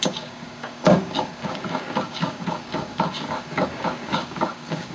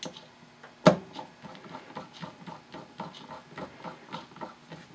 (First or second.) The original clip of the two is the second